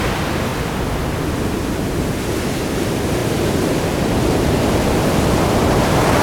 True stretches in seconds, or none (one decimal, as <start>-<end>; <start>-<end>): 0.0-6.2